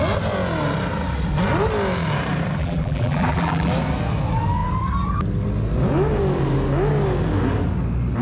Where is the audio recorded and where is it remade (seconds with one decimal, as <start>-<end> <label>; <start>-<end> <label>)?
0.0-2.6 recorded; 2.6-3.7 remade; 3.7-8.2 recorded